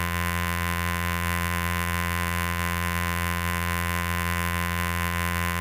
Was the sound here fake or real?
fake